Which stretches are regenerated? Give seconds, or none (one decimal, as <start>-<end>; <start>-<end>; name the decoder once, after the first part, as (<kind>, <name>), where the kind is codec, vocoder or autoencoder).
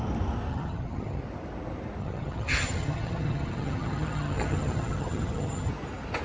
0.5-1.2 (vocoder, HiFi-GAN); 2.0-5.7